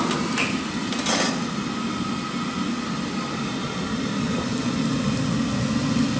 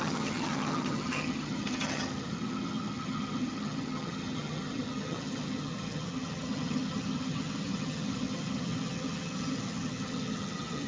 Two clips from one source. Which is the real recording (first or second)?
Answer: first